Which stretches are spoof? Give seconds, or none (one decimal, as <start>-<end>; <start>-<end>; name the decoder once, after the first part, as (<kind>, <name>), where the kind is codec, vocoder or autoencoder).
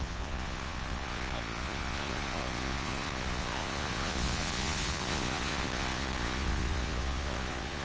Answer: 0.0-7.8 (vocoder, Vocos)